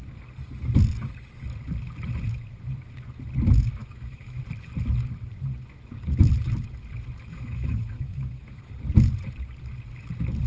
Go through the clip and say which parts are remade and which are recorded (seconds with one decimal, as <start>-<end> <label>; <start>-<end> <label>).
0.0-3.8 recorded; 3.8-4.4 remade; 4.4-7.3 recorded; 7.3-8.7 remade; 8.7-10.5 recorded